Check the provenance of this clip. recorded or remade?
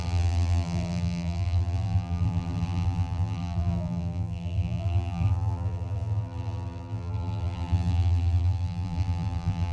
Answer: remade